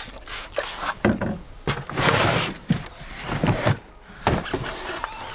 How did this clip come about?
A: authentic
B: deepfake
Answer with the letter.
A